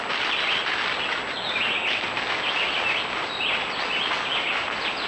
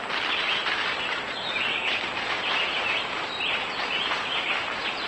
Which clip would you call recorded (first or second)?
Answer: first